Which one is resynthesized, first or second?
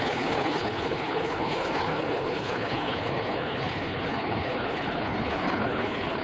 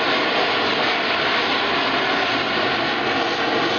first